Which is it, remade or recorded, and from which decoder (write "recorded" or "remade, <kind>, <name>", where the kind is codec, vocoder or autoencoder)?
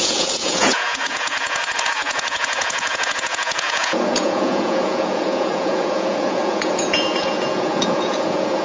remade, vocoder, Vocos